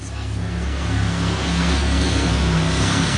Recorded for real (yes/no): no